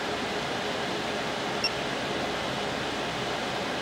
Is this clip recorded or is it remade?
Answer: recorded